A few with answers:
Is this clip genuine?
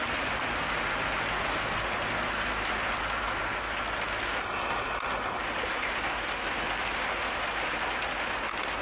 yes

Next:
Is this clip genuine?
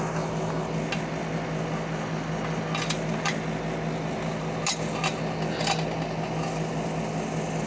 yes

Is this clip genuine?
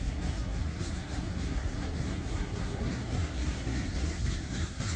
no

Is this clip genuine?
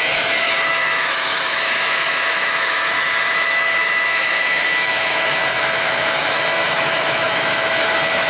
no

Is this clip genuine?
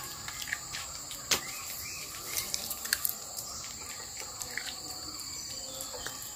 no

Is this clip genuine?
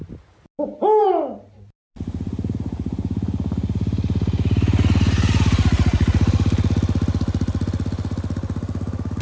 yes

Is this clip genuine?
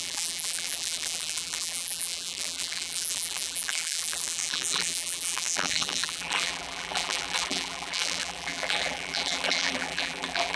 no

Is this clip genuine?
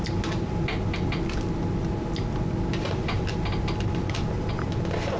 yes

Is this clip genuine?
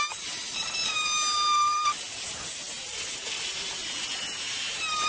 yes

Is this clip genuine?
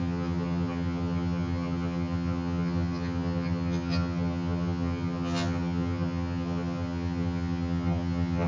no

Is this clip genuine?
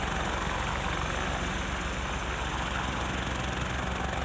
yes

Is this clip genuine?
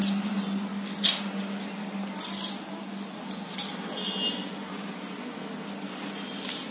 yes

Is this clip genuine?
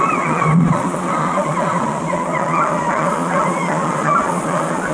no